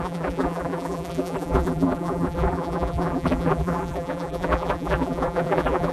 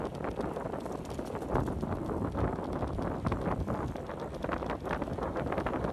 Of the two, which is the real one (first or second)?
second